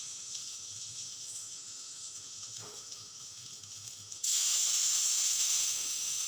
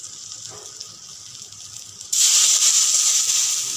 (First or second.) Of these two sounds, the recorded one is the second